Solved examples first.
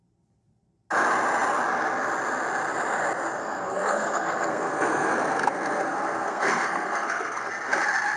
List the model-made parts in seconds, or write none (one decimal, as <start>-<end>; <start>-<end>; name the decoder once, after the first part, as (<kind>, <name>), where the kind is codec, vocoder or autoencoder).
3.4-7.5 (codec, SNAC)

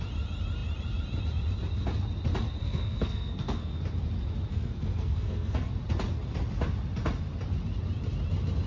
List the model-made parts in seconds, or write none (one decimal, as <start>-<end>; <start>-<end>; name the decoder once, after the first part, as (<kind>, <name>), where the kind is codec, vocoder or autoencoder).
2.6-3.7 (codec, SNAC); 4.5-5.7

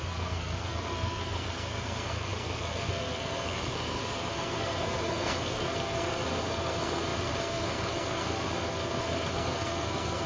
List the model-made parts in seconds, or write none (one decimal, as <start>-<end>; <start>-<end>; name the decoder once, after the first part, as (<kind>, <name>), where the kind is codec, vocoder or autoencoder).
0.0-10.3 (codec, SNAC)